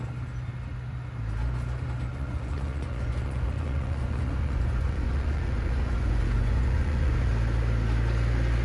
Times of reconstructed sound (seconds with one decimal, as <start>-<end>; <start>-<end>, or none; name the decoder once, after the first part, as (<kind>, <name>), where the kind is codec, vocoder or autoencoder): 2.1-7.3 (vocoder, Vocos)